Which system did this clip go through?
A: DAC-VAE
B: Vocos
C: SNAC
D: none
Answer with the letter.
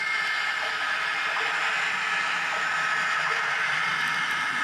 D